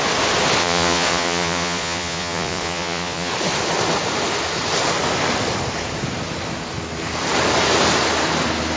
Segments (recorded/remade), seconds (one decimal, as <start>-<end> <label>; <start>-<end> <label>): 0.0-0.6 recorded; 0.6-3.3 remade; 3.3-8.8 recorded